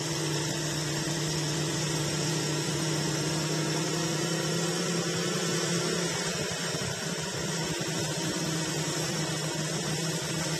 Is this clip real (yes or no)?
no